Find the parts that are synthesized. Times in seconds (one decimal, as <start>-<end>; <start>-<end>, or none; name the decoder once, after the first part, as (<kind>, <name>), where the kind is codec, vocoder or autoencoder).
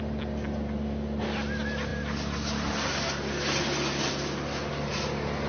none